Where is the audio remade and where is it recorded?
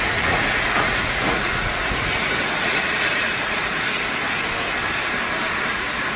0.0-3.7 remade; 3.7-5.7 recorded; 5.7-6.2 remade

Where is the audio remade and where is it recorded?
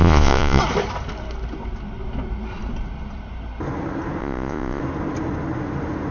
0.0-0.6 remade; 0.6-4.2 recorded; 4.2-4.8 remade; 4.8-6.1 recorded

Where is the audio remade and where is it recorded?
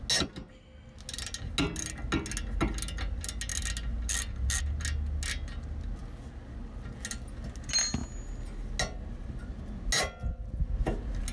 0.0-11.3 recorded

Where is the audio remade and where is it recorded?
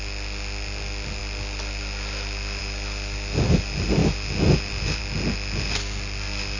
0.0-6.6 recorded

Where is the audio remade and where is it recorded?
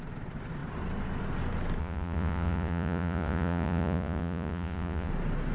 0.0-1.8 recorded; 1.8-5.1 remade; 5.1-5.5 recorded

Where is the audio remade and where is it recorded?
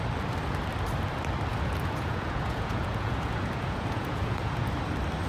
0.0-1.5 recorded; 1.5-4.7 remade; 4.7-5.3 recorded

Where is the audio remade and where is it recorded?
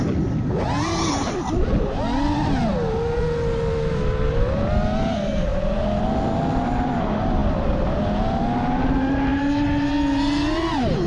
0.0-11.1 recorded